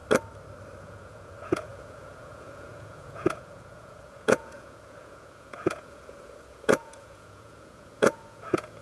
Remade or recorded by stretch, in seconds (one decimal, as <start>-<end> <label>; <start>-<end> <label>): 0.0-0.8 recorded; 0.8-8.8 remade